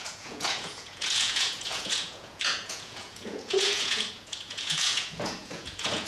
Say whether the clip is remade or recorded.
remade